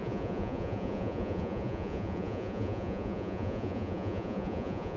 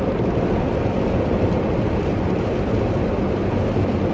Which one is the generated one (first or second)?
first